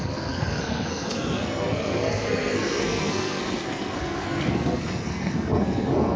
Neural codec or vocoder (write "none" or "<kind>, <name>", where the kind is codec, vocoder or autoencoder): codec, SNAC